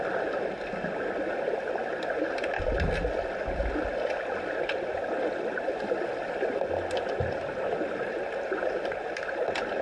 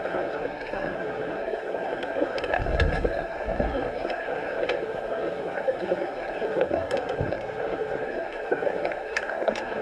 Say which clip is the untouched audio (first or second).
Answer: first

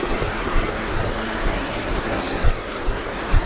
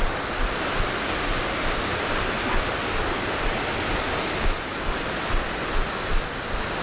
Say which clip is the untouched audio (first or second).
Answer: second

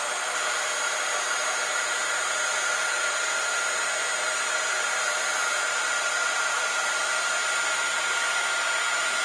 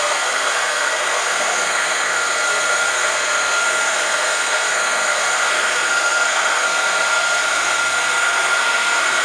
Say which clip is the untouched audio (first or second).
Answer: first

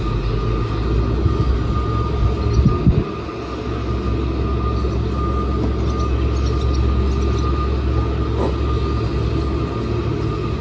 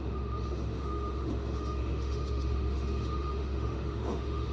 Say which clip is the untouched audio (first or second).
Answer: first